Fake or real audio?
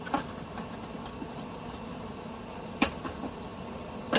real